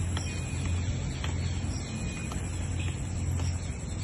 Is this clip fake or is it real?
real